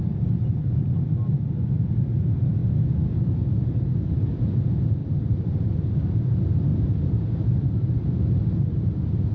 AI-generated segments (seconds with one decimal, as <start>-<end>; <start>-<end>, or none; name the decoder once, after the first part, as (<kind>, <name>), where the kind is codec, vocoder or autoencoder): 5.0-6.0 (vocoder, BigVGAN v2); 6.7-7.5